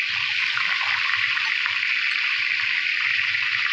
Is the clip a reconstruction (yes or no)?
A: yes